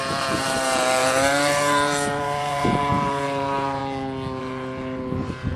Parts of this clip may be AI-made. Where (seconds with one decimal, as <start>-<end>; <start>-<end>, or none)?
0.0-3.8; 4.4-5.6